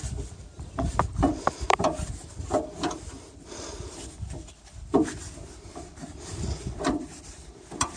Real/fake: fake